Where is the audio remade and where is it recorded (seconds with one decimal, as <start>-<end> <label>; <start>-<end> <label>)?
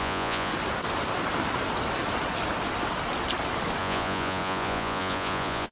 0.0-0.5 remade; 0.5-3.8 recorded; 3.8-5.7 remade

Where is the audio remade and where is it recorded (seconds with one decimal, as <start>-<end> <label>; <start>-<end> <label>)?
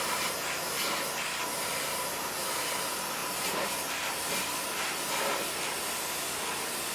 0.0-6.9 recorded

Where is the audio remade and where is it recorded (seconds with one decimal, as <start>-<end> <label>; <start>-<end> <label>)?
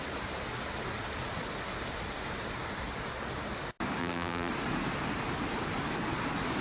0.0-4.0 recorded; 4.0-4.5 remade; 4.5-6.6 recorded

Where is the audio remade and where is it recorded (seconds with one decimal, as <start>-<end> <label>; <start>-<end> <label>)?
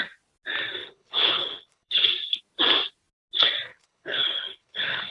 0.0-0.8 recorded; 0.8-2.1 remade; 2.1-3.7 recorded; 3.7-5.1 remade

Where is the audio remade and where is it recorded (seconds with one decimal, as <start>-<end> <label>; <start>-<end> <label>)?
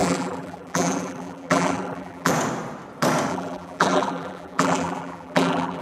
0.0-2.3 remade; 2.3-3.3 recorded; 3.3-5.8 remade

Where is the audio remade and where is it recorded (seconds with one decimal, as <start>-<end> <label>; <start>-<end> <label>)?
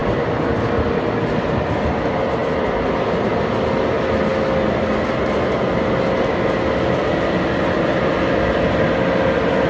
0.0-9.7 recorded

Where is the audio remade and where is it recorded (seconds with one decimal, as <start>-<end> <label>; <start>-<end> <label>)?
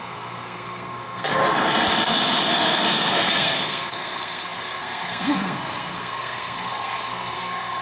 0.0-1.4 remade; 1.4-2.5 recorded; 2.5-7.8 remade